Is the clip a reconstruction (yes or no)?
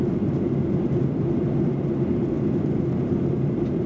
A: no